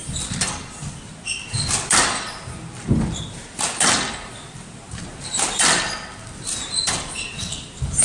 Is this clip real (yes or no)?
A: yes